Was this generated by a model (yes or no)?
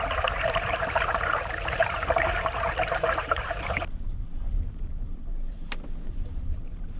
yes